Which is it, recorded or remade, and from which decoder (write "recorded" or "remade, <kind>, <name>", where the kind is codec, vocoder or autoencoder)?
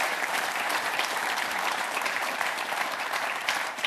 remade, vocoder, BigVGAN v2